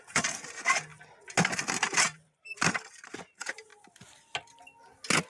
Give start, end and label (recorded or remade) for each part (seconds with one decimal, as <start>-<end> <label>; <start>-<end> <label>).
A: 0.0-0.9 remade; 0.9-1.8 recorded; 1.8-3.7 remade; 3.7-5.3 recorded

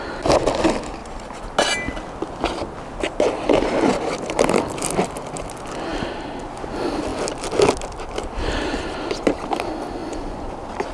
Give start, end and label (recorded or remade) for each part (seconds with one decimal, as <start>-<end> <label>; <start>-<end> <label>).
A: 0.0-10.0 recorded; 10.0-10.5 remade; 10.5-10.9 recorded

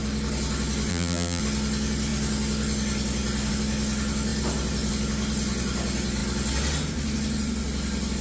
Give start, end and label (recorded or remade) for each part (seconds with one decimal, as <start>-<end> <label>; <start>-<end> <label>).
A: 0.0-0.9 recorded; 0.9-1.4 remade; 1.4-8.2 recorded

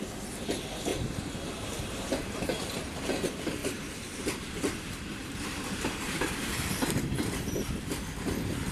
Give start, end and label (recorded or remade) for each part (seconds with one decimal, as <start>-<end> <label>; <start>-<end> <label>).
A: 0.0-0.9 recorded; 0.9-2.7 remade; 2.7-3.6 recorded; 3.6-7.9 remade; 7.9-8.7 recorded

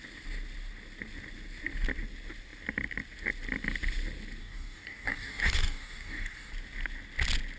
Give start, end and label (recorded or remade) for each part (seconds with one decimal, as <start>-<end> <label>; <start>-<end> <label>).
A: 0.0-4.4 recorded; 4.4-6.5 remade; 6.5-7.6 recorded

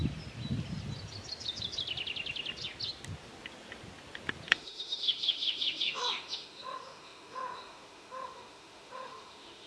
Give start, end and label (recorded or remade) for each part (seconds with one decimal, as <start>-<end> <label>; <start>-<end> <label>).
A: 0.0-4.5 recorded; 4.5-9.7 remade

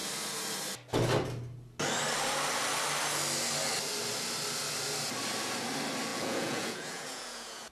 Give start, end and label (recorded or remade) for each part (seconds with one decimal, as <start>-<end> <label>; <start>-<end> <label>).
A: 0.0-6.1 recorded; 6.1-7.7 remade